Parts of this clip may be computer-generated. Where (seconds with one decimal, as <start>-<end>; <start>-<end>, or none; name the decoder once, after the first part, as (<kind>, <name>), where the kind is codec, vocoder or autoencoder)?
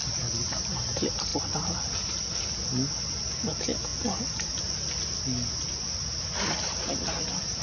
none